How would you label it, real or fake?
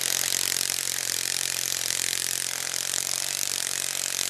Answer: fake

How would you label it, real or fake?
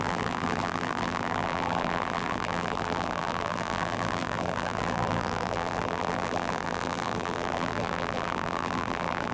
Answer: fake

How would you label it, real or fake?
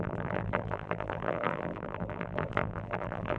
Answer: fake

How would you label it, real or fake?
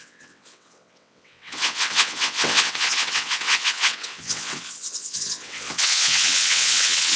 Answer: fake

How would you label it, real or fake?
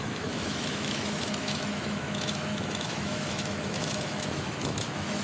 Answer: fake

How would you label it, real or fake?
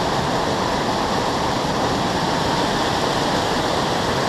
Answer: real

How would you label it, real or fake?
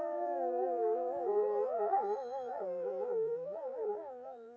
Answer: fake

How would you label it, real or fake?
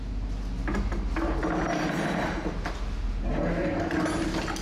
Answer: real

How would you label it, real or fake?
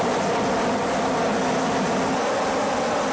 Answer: real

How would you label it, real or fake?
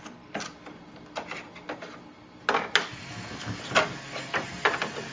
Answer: real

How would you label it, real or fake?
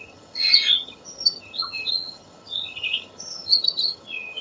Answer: fake